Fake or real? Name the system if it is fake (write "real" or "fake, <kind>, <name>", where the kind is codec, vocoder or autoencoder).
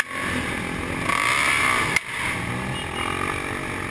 real